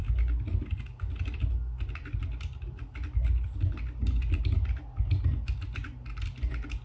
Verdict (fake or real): real